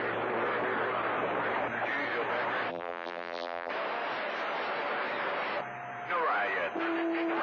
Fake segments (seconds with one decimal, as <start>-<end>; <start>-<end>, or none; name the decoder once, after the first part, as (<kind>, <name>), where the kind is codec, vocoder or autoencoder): 2.7-3.7 (vocoder, BigVGAN v2)